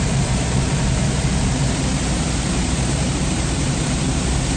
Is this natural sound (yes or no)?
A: no